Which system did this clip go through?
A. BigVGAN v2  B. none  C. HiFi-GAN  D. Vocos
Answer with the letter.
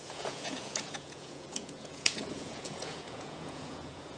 D